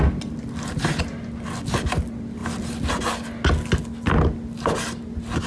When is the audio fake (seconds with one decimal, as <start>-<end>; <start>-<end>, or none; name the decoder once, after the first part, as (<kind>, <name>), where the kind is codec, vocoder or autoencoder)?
none